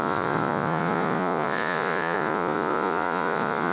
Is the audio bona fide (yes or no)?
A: no